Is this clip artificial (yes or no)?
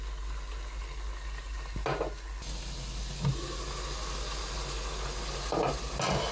no